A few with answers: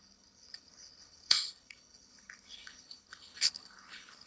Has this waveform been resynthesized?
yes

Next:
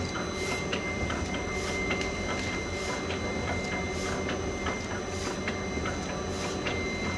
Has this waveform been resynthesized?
no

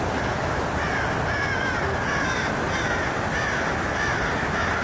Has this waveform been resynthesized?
no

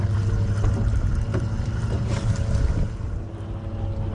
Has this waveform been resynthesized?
no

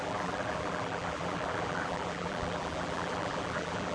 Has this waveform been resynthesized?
yes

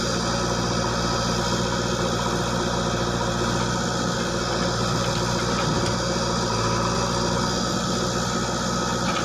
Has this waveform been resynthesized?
no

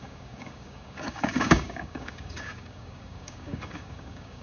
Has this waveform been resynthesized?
yes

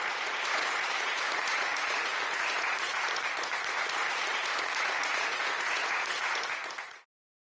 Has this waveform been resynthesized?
yes